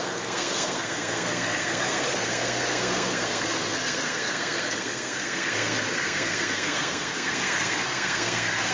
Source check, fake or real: fake